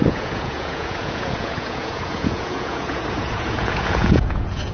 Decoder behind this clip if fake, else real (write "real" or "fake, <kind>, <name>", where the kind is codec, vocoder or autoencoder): fake, vocoder, Vocos